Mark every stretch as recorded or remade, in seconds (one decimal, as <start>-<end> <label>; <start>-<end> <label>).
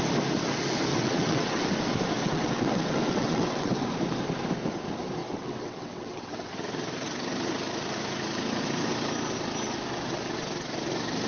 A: 0.0-0.9 recorded; 0.9-1.6 remade; 1.6-2.2 recorded; 2.2-3.9 remade; 3.9-5.2 recorded; 5.2-6.5 remade; 6.5-11.3 recorded